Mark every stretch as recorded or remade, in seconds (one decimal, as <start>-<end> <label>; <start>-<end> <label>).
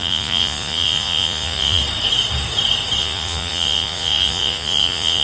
0.0-1.8 remade; 1.8-3.0 recorded; 3.0-5.2 remade